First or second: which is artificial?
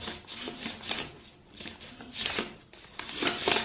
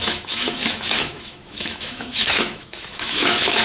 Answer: second